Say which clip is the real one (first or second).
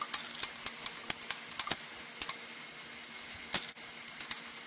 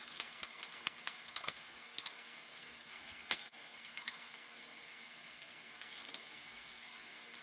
first